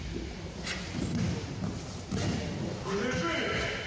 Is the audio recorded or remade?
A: recorded